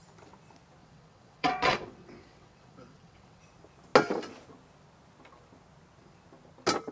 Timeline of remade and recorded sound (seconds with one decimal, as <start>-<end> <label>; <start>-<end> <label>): 0.0-0.8 recorded; 0.8-3.4 remade; 3.4-6.9 recorded